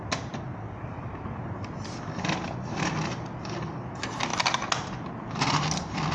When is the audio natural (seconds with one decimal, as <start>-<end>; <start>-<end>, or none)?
0.0-6.1